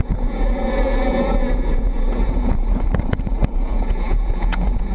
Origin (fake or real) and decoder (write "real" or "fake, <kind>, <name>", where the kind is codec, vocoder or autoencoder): fake, vocoder, Vocos